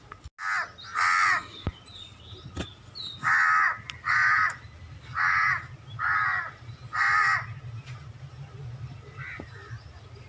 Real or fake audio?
real